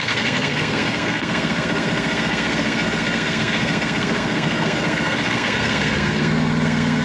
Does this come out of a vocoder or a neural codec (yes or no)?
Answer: yes